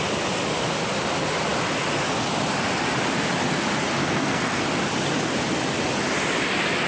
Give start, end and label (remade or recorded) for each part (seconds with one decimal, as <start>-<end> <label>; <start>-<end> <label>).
0.0-4.0 recorded; 4.0-4.6 remade; 4.6-6.9 recorded